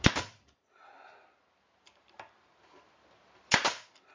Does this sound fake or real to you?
real